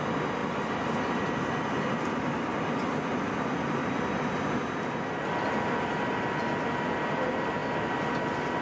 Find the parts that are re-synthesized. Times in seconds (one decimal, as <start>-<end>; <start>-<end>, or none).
none